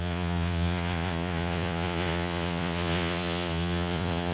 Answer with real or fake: fake